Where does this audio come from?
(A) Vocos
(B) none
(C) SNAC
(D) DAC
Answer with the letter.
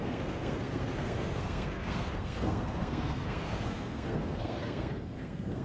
C